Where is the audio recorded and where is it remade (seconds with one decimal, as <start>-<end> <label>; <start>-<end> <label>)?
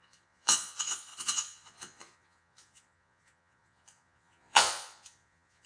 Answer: 0.0-5.7 remade